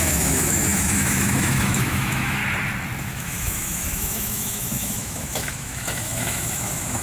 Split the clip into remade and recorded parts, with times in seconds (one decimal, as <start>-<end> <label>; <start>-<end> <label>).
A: 0.0-2.4 remade; 2.4-3.0 recorded; 3.0-7.0 remade